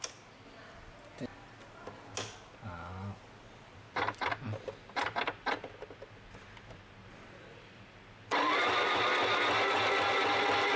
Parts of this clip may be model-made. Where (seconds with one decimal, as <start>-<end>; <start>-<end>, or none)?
none